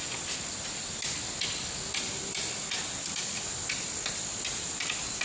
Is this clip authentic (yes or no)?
yes